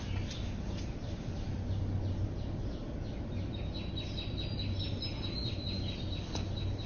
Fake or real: real